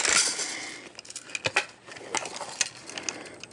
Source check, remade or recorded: recorded